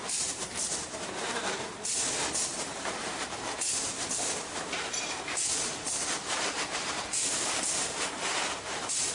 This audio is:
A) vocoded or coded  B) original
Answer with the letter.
A